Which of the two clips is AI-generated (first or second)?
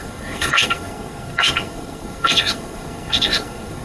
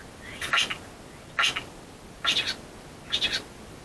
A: first